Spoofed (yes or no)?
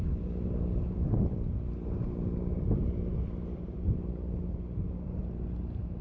no